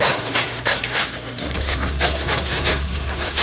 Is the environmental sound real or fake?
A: fake